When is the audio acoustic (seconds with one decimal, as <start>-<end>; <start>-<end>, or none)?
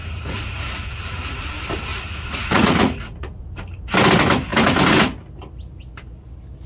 1.5-1.9; 3.4-6.7